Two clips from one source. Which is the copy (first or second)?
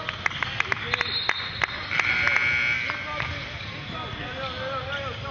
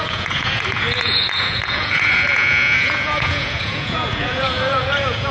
second